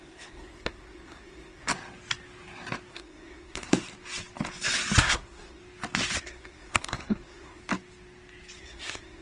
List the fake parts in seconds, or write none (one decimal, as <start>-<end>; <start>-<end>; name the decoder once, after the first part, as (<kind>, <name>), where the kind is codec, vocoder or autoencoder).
0.0-1.7 (codec, SNAC); 2.9-3.7; 5.0-5.6; 6.2-7.6; 8.6-9.2